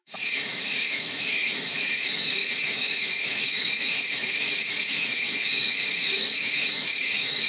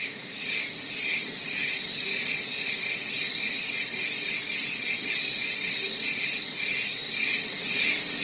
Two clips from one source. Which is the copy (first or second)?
first